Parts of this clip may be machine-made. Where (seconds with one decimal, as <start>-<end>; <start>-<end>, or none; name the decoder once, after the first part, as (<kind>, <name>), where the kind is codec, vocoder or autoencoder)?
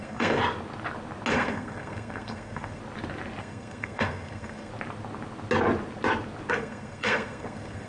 0.0-0.4 (codec, SNAC); 1.3-2.8; 3.4-4.7; 6.5-7.9